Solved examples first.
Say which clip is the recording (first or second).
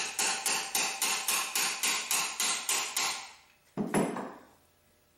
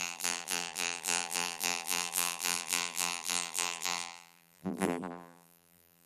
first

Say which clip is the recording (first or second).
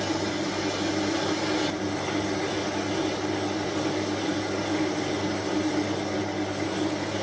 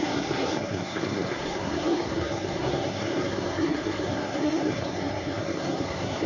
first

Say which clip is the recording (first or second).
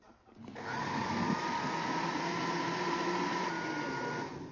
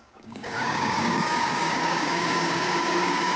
first